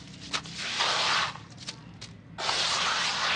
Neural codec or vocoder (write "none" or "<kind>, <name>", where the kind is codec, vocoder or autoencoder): none